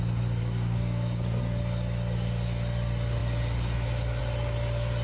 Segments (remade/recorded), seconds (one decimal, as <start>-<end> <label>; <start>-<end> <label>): 0.0-0.4 recorded; 0.4-1.4 remade; 1.4-5.0 recorded